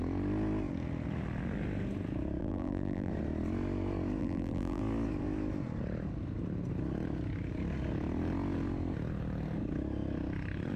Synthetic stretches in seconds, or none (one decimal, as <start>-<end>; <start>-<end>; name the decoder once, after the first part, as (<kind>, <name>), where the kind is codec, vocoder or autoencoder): 2.4-3.1 (vocoder, BigVGAN v2); 4.2-4.8